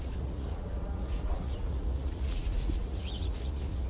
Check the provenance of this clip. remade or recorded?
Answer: remade